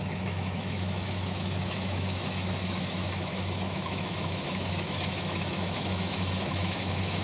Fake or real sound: fake